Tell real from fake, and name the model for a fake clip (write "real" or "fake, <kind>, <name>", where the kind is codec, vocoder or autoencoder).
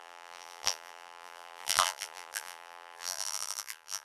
fake, vocoder, BigVGAN v2